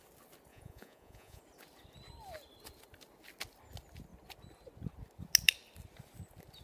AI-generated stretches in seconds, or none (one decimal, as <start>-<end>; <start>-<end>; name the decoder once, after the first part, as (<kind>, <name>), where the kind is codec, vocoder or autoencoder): 0.5-1.4 (vocoder, Vocos)